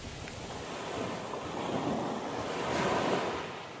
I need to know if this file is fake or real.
real